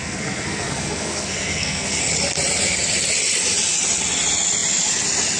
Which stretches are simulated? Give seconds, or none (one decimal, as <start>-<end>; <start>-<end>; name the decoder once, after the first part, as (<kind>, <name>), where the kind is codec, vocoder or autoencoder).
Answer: 0.0-2.0 (codec, SNAC)